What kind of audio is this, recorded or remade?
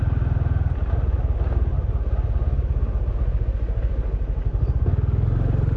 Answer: recorded